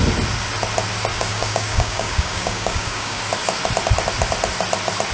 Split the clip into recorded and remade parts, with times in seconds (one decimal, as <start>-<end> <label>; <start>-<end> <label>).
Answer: 0.0-1.1 recorded; 1.1-3.2 remade; 3.2-5.1 recorded